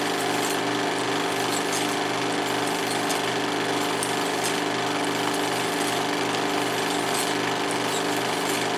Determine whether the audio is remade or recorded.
recorded